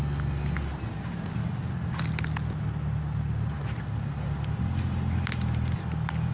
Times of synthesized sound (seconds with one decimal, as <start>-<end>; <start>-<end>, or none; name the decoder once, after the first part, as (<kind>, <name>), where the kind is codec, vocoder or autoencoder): none